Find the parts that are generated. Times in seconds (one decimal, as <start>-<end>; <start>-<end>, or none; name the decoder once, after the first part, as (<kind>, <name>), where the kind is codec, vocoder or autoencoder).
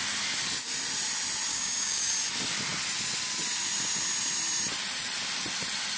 1.5-2.1 (codec, DAC)